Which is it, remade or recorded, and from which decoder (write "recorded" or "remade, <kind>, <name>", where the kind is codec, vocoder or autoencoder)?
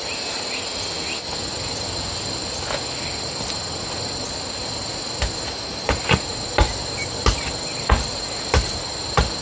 recorded